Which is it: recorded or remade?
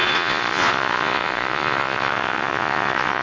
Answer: remade